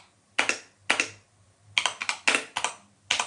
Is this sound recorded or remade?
recorded